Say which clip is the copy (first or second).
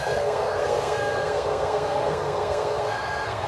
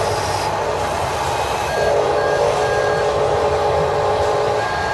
first